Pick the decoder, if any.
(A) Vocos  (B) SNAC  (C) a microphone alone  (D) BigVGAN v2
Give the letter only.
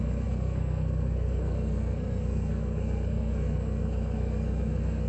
B